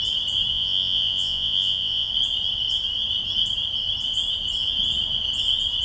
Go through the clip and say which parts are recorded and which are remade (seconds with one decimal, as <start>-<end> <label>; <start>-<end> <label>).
0.0-0.5 recorded; 0.5-2.1 remade; 2.1-5.8 recorded